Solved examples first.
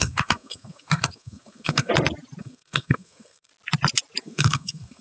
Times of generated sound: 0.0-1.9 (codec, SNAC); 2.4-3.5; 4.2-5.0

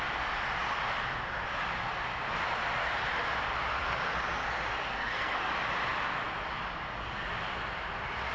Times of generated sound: 4.9-5.5 (codec, SNAC)

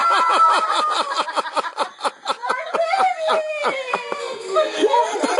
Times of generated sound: 3.9-5.0 (codec, SNAC)

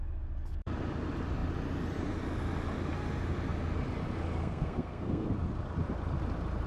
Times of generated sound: 4.4-5.3 (codec, SNAC)